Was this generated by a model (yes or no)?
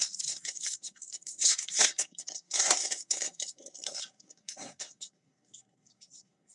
yes